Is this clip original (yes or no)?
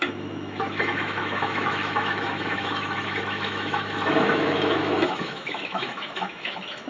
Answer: no